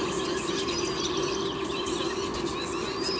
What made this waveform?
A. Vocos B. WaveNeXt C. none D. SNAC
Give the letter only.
C